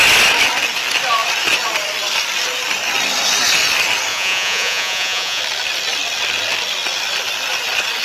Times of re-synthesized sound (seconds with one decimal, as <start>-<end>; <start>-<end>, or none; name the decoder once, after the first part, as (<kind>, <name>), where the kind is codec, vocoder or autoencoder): 4.1-5.4 (vocoder, Vocos)